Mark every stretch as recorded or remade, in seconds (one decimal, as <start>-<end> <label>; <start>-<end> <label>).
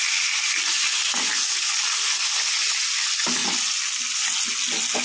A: 0.0-5.0 recorded